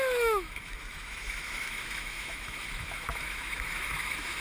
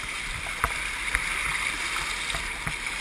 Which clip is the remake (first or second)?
first